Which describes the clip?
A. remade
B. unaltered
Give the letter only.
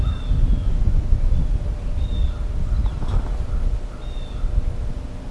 B